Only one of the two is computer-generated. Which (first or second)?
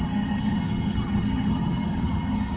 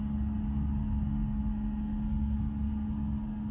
first